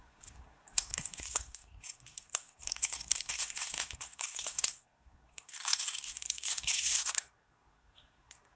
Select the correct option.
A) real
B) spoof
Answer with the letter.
B